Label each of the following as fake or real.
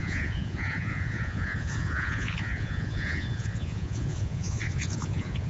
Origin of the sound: fake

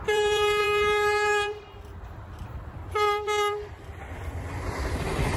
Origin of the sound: fake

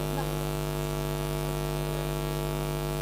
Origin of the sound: fake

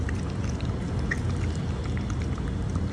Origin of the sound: real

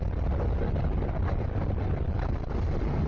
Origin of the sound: real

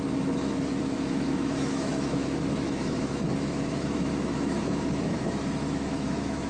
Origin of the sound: fake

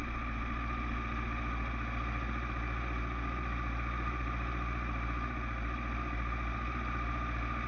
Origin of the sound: real